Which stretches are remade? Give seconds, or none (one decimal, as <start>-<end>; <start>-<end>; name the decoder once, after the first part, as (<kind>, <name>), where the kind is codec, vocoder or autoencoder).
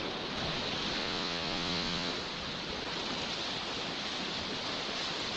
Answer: 1.0-2.1 (vocoder, Vocos)